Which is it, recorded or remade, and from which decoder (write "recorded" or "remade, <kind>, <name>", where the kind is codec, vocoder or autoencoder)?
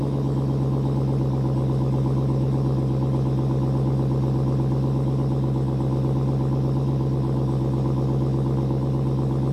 recorded